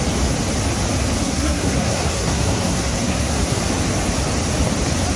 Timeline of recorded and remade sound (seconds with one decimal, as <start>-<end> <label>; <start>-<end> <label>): 0.0-1.2 recorded; 1.2-3.6 remade; 3.6-5.2 recorded